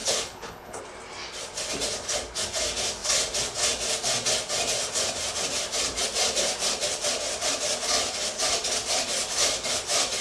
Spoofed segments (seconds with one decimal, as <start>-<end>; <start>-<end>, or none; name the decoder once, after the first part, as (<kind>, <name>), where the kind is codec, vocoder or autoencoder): 0.0-0.8 (codec, HILCodec)